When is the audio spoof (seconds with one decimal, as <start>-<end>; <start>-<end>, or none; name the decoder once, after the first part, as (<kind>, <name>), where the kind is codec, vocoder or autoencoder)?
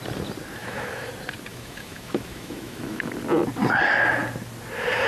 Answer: 0.6-1.1 (autoencoder, DAC-VAE); 1.5-3.1